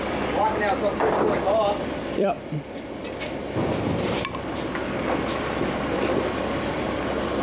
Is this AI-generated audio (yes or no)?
yes